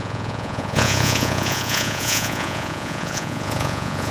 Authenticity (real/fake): fake